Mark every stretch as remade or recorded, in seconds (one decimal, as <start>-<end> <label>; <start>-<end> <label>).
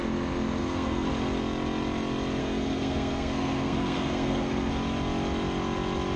0.0-0.6 recorded; 0.6-1.1 remade; 1.1-2.4 recorded; 2.4-4.7 remade; 4.7-6.2 recorded